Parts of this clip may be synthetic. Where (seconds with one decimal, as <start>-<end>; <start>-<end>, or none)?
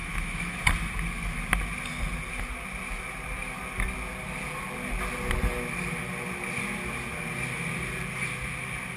0.0-0.6